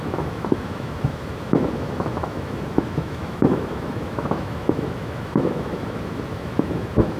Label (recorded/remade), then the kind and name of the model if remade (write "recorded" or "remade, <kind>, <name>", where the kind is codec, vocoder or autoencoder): remade, autoencoder, DAC-VAE